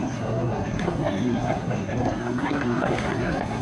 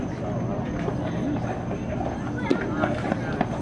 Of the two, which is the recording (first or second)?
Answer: second